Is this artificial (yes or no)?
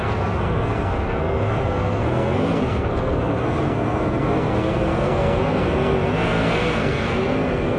yes